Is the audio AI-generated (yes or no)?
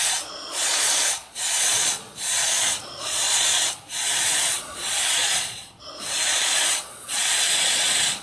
yes